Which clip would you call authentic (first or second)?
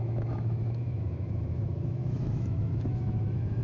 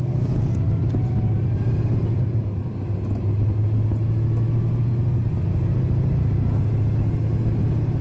second